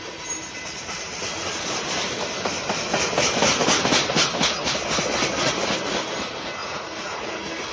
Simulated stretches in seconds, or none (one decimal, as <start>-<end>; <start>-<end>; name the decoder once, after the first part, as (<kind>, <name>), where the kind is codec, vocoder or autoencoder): 6.6-7.3 (vocoder, Vocos)